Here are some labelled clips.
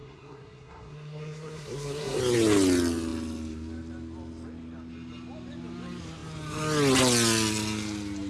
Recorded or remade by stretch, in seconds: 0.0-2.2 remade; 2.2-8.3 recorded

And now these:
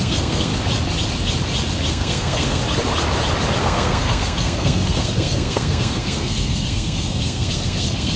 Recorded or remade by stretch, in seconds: 0.0-0.5 remade; 0.5-1.9 recorded; 1.9-2.6 remade; 2.6-3.6 recorded; 3.6-8.2 remade

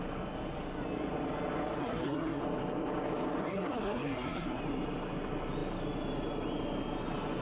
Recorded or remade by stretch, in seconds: 0.0-1.8 recorded; 1.8-2.4 remade; 2.4-3.4 recorded; 3.4-4.6 remade; 4.6-7.4 recorded

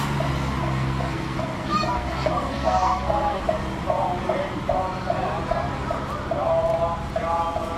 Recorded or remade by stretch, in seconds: 0.0-0.6 recorded; 0.6-3.4 remade; 3.4-7.8 recorded